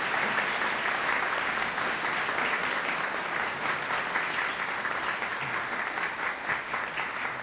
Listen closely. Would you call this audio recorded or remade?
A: recorded